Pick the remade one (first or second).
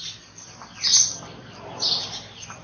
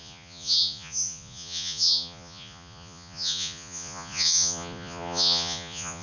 second